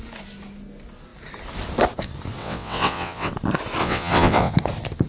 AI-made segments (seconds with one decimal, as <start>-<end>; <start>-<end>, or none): 2.4-3.3; 3.8-4.5